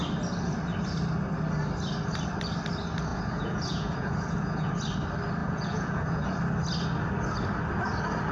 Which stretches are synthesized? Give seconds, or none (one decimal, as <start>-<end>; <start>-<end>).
3.1-4.7; 5.4-6.4

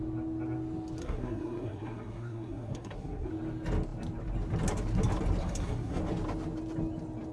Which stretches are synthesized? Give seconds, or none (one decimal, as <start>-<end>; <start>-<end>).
1.0-3.3; 5.4-6.0

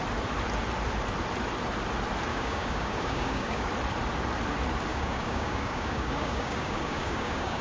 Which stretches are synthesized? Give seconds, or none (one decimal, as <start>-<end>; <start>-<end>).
2.3-3.7; 4.9-7.6

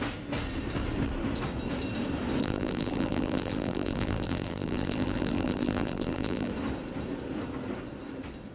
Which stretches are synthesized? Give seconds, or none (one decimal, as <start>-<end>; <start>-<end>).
2.4-6.5